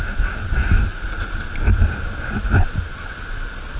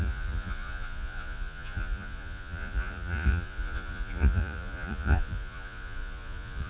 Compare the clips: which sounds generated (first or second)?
second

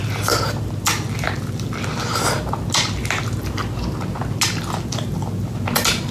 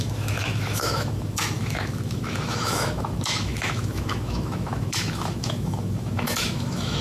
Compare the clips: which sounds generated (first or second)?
second